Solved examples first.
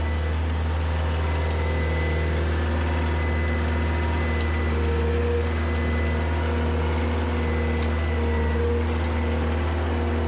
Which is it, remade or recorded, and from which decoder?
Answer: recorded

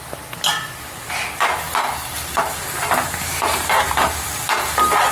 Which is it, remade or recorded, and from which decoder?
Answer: recorded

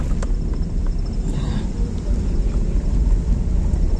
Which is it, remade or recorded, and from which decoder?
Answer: recorded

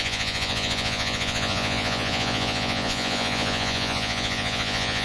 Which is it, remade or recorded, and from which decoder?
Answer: remade, vocoder, Vocos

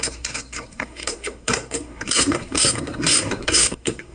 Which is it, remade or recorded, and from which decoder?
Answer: remade, codec, SNAC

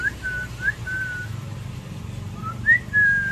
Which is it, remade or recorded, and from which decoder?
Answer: recorded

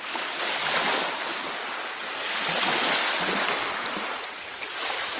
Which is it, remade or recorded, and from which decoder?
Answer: recorded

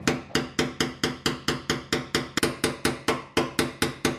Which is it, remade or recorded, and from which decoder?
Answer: recorded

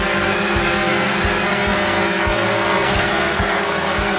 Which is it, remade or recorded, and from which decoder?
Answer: remade, codec, SNAC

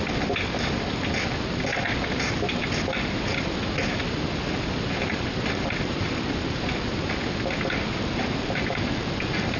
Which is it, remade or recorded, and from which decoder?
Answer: recorded